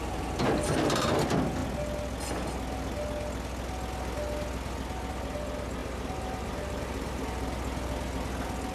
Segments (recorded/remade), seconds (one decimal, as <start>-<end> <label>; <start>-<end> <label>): 0.0-5.8 recorded; 5.8-7.2 remade; 7.2-8.7 recorded